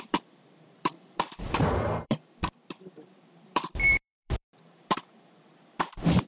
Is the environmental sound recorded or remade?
remade